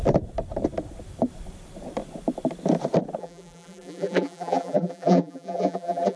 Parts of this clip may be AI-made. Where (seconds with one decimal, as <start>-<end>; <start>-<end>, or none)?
3.2-6.2